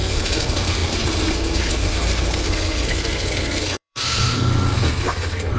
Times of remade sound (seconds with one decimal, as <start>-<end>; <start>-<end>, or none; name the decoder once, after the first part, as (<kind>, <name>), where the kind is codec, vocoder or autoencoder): 0.0-5.6 (codec, SNAC)